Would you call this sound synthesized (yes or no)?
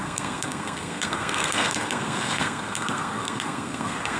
yes